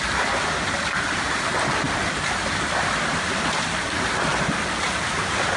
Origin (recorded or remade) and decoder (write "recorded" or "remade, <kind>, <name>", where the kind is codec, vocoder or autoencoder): recorded